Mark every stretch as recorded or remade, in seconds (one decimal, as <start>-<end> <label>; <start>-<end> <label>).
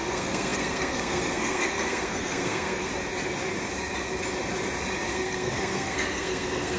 0.0-2.9 remade; 2.9-5.1 recorded; 5.1-6.8 remade